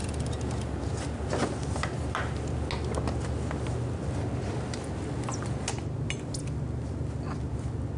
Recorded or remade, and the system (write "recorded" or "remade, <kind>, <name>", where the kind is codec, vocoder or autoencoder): recorded